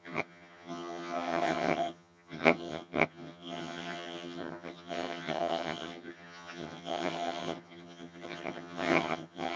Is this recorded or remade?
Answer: remade